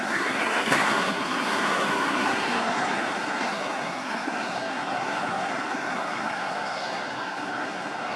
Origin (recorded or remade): remade